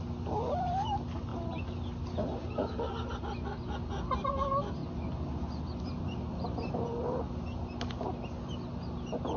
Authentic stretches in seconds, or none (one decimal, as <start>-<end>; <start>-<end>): 0.0-9.4